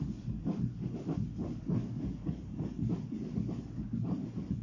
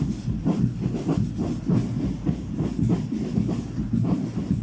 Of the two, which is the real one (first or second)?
second